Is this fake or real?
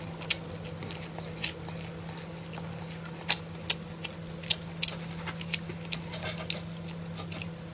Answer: real